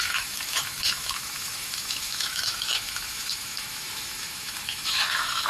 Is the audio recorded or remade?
remade